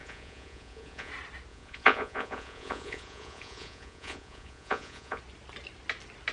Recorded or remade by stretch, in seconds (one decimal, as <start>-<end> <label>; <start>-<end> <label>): 0.0-1.1 remade; 1.1-1.5 recorded; 1.5-5.2 remade; 5.2-6.3 recorded